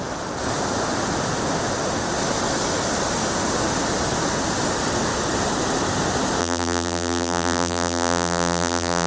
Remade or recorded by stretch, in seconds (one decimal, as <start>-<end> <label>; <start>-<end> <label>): 0.0-6.4 recorded; 6.4-9.1 remade